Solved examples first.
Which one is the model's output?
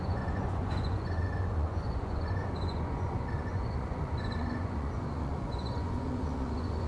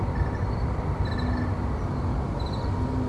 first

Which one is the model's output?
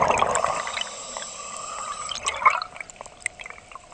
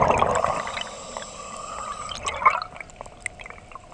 first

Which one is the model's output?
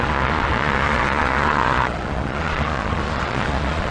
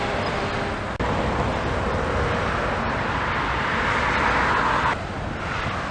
first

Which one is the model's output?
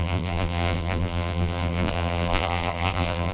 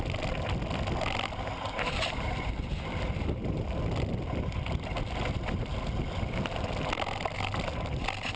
first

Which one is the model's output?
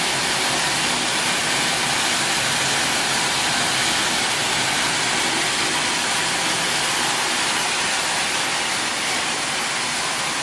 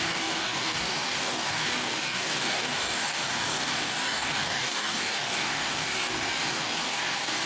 second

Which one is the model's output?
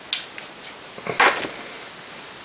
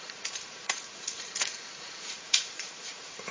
second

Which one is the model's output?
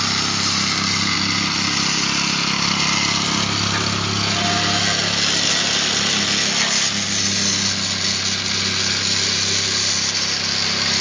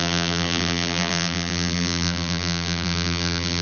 second